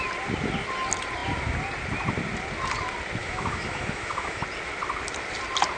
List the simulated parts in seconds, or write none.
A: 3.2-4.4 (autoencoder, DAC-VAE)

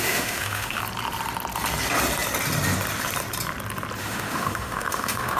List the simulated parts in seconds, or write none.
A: 0.0-0.8 (autoencoder, DAC-VAE); 4.0-5.4

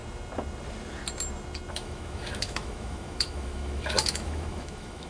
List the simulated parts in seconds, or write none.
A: 1.7-5.1 (autoencoder, DAC-VAE)